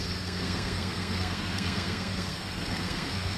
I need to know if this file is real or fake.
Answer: fake